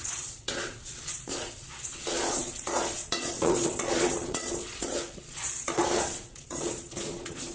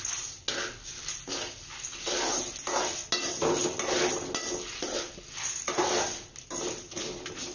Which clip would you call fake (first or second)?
first